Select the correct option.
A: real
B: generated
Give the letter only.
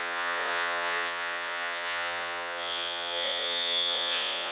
B